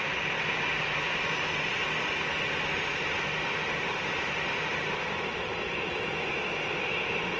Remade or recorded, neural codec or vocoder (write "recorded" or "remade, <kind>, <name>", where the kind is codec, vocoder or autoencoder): recorded